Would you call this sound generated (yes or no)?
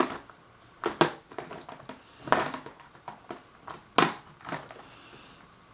no